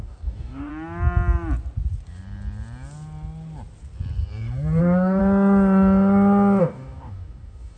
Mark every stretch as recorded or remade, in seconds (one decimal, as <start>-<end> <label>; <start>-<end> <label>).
0.0-0.7 remade; 0.7-4.8 recorded; 4.8-5.2 remade; 5.2-6.6 recorded; 6.6-7.8 remade